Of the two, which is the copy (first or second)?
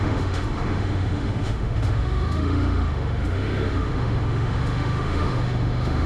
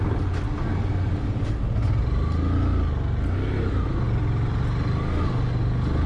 first